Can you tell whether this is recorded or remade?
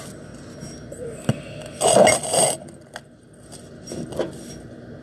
recorded